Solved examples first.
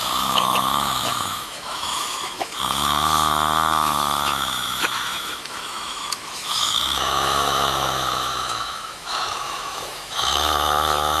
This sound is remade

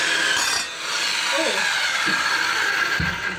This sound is recorded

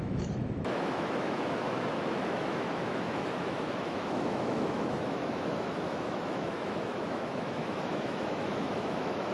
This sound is remade